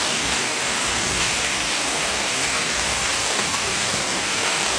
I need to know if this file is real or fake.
fake